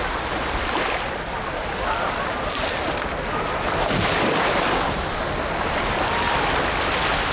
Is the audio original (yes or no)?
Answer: yes